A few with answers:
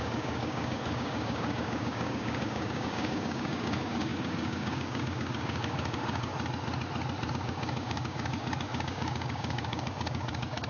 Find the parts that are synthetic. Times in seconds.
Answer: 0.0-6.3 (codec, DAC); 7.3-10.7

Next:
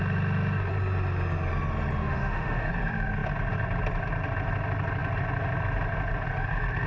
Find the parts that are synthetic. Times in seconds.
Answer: 2.0-2.7 (autoencoder, DAC-VAE)

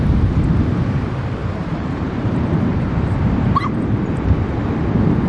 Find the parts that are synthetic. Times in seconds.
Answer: 1.4-4.6 (vocoder, BigVGAN v2)

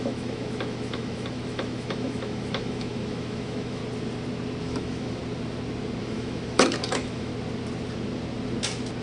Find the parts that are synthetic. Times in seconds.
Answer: 0.0-3.8 (autoencoder, DAC-VAE); 4.6-5.2; 6.0-7.3